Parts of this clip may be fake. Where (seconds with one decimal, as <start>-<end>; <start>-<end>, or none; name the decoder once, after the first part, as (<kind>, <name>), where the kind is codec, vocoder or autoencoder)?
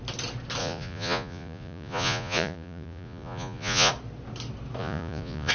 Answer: 0.6-3.9 (vocoder, Vocos); 4.8-5.5